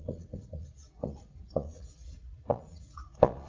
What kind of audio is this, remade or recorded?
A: remade